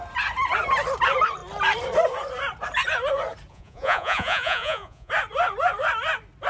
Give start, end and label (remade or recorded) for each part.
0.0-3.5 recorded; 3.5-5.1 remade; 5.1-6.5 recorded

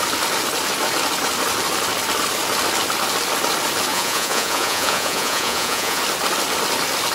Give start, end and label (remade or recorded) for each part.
0.0-3.9 recorded; 3.9-6.0 remade; 6.0-7.1 recorded